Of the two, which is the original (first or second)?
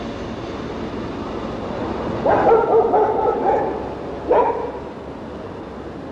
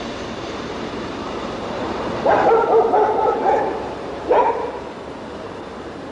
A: first